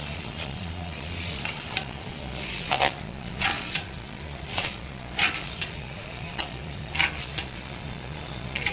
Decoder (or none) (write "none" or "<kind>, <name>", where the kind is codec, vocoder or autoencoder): vocoder, Vocos